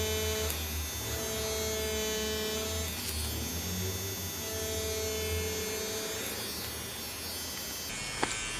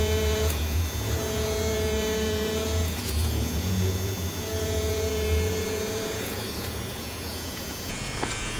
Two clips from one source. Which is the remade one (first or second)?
second